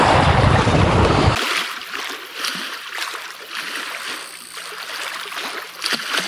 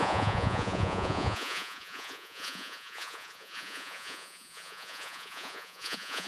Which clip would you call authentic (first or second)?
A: first